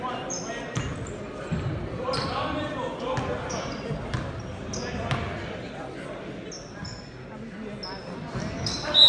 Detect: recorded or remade recorded